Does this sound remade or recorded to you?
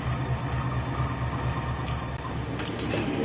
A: recorded